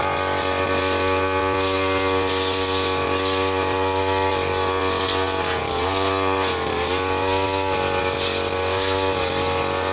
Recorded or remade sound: recorded